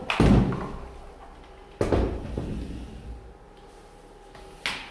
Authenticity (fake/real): real